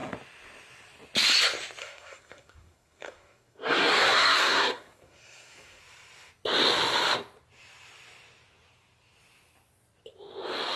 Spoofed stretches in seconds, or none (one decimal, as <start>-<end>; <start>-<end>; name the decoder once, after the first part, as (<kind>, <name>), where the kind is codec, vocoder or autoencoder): 1.8-5.8 (codec, SNAC)